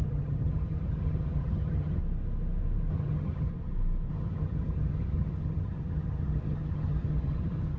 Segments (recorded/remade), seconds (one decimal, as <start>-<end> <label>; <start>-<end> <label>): 0.0-2.0 remade; 2.0-2.9 recorded; 2.9-3.5 remade; 3.5-4.1 recorded; 4.1-7.8 remade